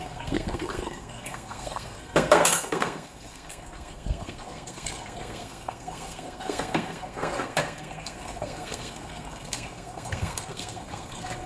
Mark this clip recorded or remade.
remade